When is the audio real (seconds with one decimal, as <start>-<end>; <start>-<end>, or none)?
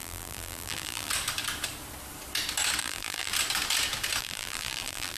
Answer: 1.1-2.8; 3.3-4.2